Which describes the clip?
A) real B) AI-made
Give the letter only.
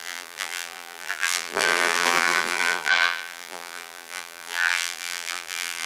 B